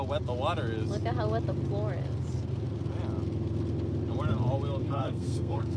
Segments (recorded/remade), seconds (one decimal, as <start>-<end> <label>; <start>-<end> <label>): 0.0-4.8 recorded; 4.8-5.8 remade